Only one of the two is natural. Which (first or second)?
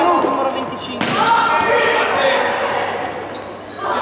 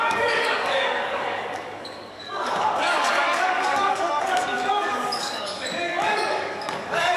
first